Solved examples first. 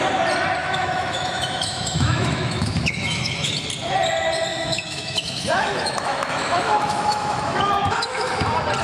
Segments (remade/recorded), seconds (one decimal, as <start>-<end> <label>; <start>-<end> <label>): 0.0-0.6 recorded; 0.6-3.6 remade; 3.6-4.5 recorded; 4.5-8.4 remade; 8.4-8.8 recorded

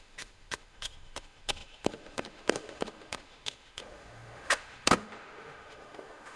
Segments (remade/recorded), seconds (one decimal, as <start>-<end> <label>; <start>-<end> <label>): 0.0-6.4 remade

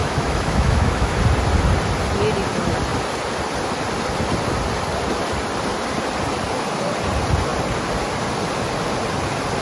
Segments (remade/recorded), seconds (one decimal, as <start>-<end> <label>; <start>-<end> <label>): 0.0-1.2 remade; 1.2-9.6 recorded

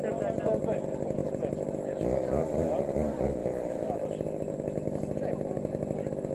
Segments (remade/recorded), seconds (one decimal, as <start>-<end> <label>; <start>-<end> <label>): 0.0-3.4 recorded; 3.4-4.0 remade; 4.0-6.3 recorded

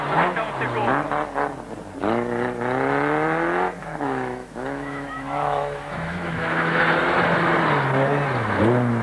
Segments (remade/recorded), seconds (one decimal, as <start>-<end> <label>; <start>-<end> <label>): 0.0-3.8 recorded; 3.8-6.8 remade; 6.8-9.0 recorded

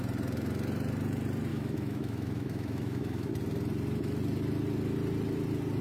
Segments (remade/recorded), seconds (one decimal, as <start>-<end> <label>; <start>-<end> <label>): 0.0-1.5 recorded; 1.5-3.3 remade; 3.3-5.8 recorded

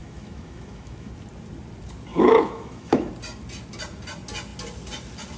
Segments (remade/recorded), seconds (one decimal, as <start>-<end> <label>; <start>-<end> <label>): 0.0-1.1 remade; 1.1-2.1 recorded; 2.1-3.1 remade; 3.1-5.4 recorded

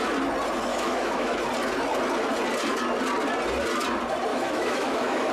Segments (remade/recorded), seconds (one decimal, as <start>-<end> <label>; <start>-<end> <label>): 0.0-0.7 recorded; 0.7-1.4 remade; 1.4-4.3 recorded; 4.3-5.3 remade